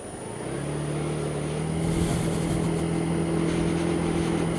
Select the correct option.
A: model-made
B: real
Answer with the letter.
B